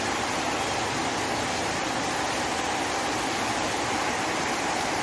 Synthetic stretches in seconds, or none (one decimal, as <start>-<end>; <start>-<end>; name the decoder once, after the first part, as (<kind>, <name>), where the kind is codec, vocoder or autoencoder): none